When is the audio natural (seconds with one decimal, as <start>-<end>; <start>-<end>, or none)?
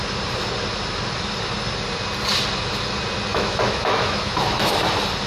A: 0.0-3.3; 4.7-5.3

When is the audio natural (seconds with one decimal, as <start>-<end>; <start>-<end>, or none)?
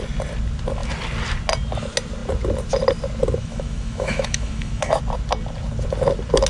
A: 0.0-3.4; 5.0-6.5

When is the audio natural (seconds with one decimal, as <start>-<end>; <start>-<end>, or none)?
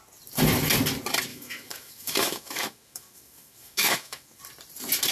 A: 0.0-1.3; 4.4-5.1